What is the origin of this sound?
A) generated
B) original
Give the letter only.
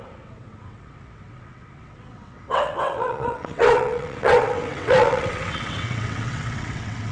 A